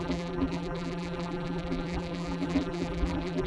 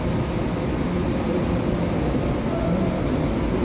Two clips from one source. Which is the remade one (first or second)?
first